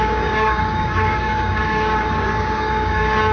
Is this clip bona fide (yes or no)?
no